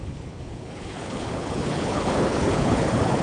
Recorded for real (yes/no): no